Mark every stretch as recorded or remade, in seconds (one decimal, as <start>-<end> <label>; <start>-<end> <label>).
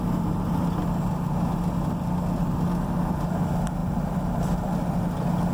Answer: 0.0-3.8 recorded; 3.8-4.7 remade; 4.7-5.5 recorded